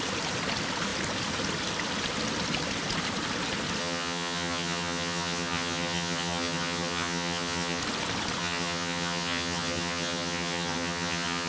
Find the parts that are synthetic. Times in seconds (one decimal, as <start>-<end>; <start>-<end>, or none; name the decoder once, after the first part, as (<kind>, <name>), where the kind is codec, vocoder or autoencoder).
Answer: 3.8-7.8 (vocoder, HiFi-GAN); 8.4-11.5